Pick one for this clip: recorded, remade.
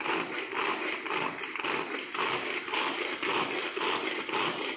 recorded